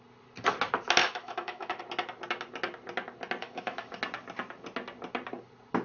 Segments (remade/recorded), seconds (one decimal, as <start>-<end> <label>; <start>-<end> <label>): 0.0-1.0 recorded; 1.0-1.8 remade; 1.8-3.4 recorded; 3.4-4.0 remade; 4.0-5.8 recorded